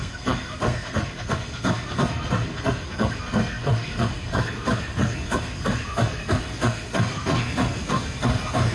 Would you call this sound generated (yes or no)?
yes